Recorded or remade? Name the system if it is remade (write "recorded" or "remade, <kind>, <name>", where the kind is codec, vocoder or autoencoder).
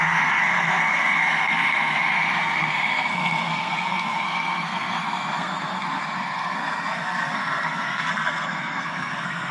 remade, codec, SNAC